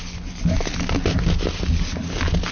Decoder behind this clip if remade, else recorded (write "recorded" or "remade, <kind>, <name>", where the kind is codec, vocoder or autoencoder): recorded